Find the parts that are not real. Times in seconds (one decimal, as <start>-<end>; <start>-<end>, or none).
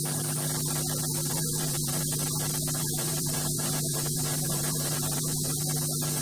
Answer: 1.2-2.0; 2.8-5.6